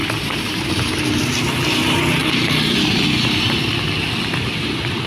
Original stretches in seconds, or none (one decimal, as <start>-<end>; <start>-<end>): 0.9-2.2; 3.6-5.1